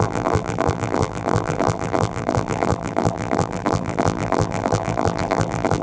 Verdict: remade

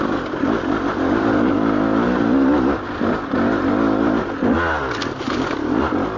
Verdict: recorded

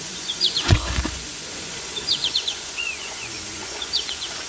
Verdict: remade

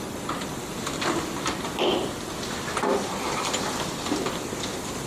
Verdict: recorded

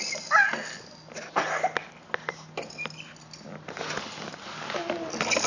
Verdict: recorded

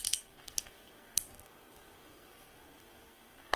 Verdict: remade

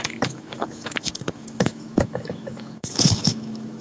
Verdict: remade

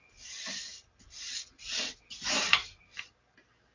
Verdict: recorded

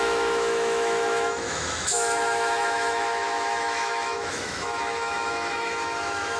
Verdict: remade